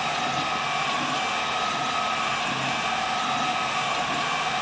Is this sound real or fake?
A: real